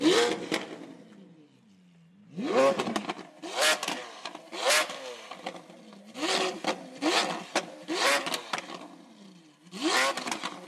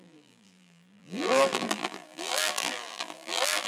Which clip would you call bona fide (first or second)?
first